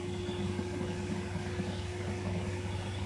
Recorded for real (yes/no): no